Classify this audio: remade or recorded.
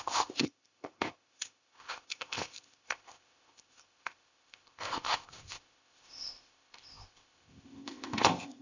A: remade